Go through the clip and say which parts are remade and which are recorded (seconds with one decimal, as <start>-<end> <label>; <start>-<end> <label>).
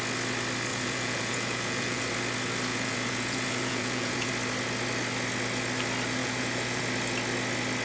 0.0-0.7 recorded; 0.7-2.1 remade; 2.1-2.7 recorded; 2.7-4.3 remade; 4.3-6.2 recorded; 6.2-6.8 remade; 6.8-7.8 recorded